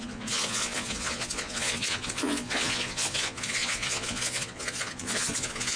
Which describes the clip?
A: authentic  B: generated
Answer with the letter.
B